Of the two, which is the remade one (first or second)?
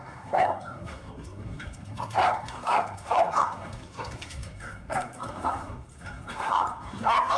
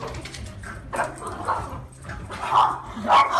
first